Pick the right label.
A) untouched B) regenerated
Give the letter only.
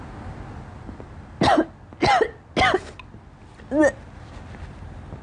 A